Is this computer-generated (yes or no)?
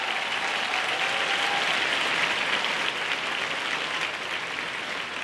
no